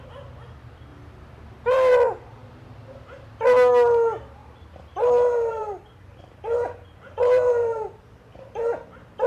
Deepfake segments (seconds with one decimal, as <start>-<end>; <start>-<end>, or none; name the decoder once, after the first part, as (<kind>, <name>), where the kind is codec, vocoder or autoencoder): 0.9-1.9 (vocoder, BigVGAN v2); 4.4-8.0